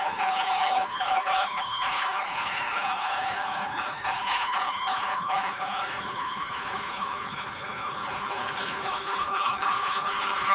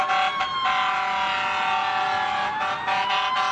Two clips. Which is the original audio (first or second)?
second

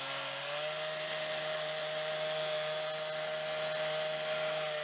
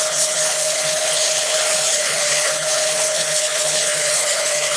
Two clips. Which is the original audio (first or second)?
first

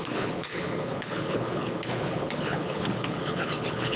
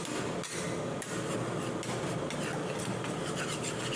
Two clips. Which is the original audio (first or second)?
second